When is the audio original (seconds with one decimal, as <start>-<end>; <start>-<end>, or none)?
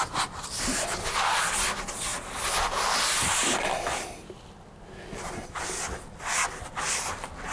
0.0-7.5